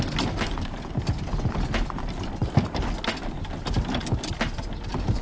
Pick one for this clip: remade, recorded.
recorded